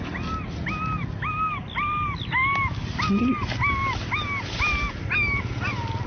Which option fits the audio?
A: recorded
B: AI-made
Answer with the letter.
A